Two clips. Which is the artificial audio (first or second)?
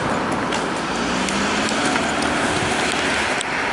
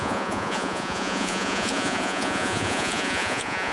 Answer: second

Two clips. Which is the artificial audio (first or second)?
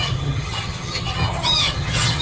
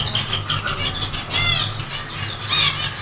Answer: first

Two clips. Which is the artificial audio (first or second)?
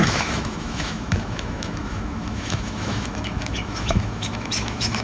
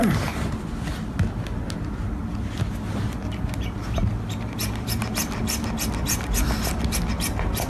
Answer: first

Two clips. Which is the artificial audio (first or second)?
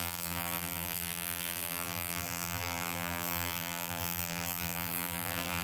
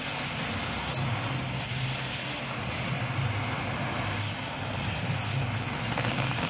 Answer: first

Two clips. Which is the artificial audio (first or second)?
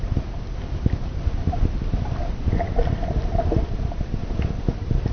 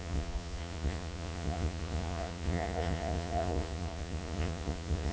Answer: second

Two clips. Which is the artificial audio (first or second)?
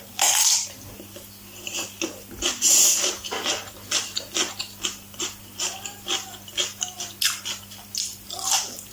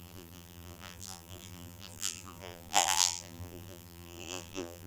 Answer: second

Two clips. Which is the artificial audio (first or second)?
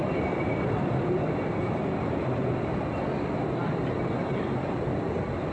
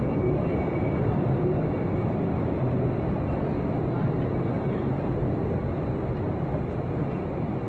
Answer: first